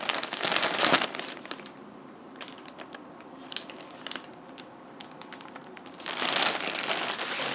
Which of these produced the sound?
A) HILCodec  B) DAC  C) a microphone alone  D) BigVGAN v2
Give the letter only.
C